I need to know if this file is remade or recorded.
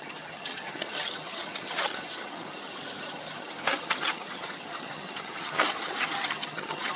remade